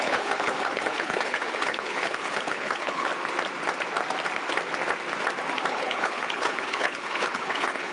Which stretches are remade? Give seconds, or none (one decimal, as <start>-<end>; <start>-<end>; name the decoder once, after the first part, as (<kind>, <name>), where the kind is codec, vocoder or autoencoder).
0.0-3.1 (codec, HILCodec); 5.7-7.9